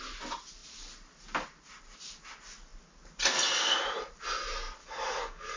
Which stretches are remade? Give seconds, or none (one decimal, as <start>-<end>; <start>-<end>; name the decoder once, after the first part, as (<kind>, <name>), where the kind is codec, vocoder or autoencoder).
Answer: 4.8-5.6 (codec, DAC)